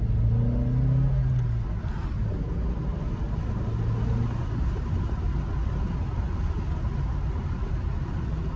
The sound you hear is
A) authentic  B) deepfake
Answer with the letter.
A